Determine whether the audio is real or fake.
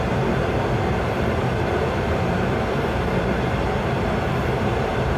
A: fake